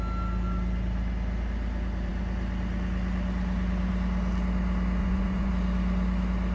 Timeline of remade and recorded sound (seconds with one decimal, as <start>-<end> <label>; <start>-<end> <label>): 0.0-5.0 recorded; 5.0-5.5 remade; 5.5-6.5 recorded